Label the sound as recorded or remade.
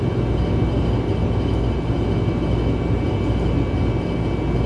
recorded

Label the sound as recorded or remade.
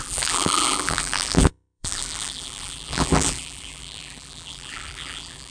remade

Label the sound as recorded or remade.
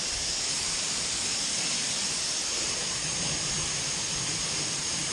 remade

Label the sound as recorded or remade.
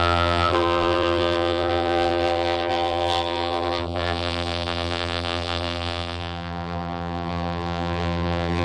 remade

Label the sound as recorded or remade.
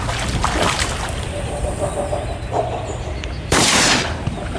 remade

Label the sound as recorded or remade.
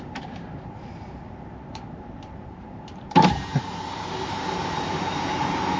remade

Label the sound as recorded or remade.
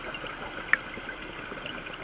recorded